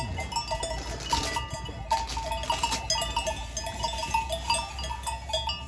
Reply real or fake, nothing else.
real